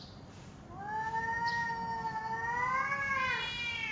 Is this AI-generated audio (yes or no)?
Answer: no